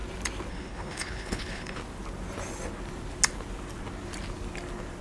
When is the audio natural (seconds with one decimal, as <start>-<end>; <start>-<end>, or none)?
0.0-0.5; 1.8-5.0